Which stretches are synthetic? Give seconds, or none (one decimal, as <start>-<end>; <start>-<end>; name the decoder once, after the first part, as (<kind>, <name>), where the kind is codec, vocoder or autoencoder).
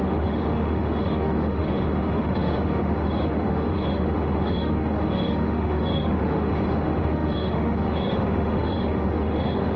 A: 0.0-9.8 (autoencoder, DAC-VAE)